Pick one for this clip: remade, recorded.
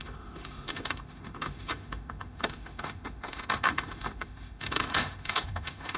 remade